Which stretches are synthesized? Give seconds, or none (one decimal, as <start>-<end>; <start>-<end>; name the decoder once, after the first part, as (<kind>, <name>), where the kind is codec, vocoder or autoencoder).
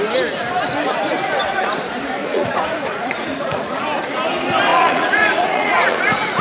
2.2-3.8 (vocoder, Vocos); 4.7-6.4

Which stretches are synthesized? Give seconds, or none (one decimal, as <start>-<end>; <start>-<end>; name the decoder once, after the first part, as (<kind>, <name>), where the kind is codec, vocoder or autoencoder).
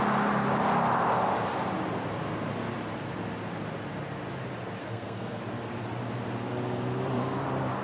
4.8-5.4 (codec, SNAC)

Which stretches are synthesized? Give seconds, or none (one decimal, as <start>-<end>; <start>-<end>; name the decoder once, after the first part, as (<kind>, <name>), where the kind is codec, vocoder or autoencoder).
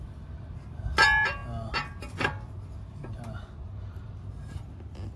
none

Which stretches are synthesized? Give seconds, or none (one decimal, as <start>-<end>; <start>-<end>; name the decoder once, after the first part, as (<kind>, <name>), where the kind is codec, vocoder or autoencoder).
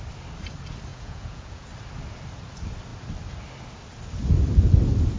0.9-1.7 (vocoder, Vocos)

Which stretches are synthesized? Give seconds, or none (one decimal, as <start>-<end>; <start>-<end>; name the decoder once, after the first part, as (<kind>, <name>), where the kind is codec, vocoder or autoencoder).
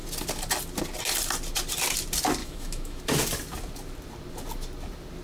2.4-3.0 (autoencoder, DAC-VAE)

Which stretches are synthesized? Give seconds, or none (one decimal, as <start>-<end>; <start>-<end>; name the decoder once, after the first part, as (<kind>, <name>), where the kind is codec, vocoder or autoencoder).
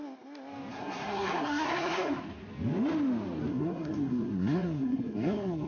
0.7-2.1 (codec, SNAC); 3.5-5.7